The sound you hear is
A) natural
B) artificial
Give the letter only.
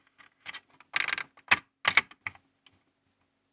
A